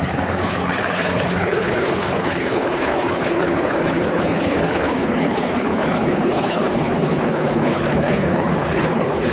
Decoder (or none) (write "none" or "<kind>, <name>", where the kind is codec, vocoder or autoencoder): codec, HILCodec